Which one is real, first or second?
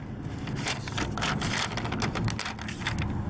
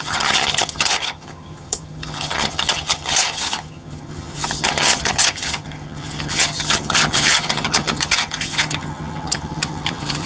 first